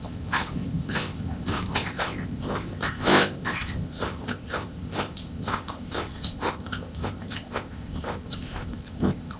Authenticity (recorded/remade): remade